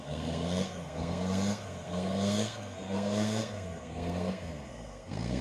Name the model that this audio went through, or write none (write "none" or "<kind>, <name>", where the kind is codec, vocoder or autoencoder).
codec, SNAC